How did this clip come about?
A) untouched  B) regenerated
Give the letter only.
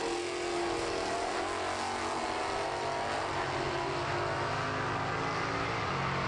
A